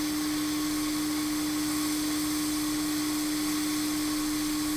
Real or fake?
real